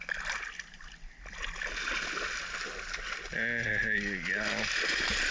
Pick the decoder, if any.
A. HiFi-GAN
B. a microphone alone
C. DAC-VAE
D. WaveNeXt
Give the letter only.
B